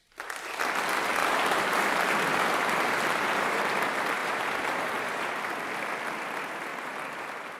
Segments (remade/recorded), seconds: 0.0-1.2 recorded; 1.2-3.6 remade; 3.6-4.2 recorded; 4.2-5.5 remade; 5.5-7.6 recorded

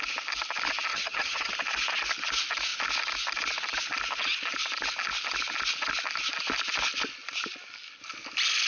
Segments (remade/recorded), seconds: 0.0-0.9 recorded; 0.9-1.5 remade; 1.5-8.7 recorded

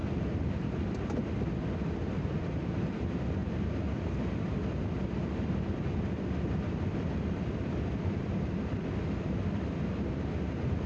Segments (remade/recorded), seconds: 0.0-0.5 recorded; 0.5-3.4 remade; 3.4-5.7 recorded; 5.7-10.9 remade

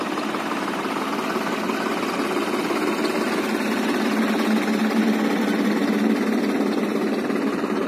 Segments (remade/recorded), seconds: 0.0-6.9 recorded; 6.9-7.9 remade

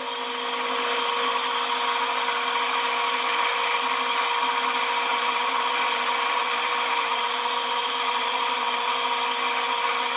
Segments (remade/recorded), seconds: 0.0-5.1 recorded; 5.1-8.9 remade; 8.9-10.2 recorded